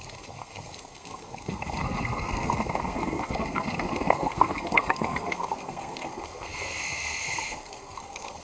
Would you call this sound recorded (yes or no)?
no